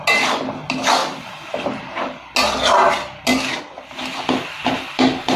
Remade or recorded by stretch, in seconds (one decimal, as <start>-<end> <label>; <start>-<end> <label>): 0.0-1.0 recorded; 1.0-1.8 remade; 1.8-3.3 recorded; 3.3-5.4 remade